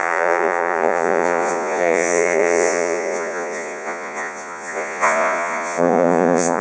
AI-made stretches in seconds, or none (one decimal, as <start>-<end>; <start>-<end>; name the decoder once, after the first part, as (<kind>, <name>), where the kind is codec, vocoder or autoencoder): 0.0-6.6 (vocoder, Vocos)